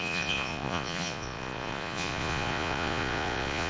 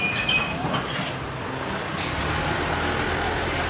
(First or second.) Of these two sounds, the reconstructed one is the first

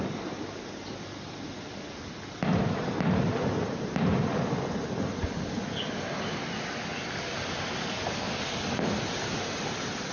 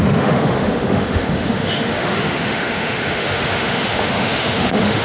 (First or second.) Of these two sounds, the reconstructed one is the second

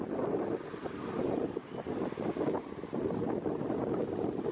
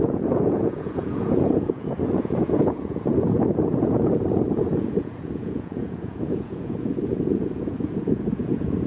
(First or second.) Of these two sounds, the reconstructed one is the second